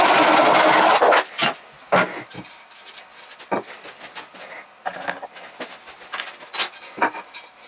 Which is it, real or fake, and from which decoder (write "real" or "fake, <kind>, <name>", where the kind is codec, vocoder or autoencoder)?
real